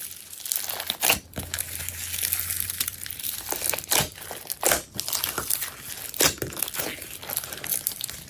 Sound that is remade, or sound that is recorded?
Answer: recorded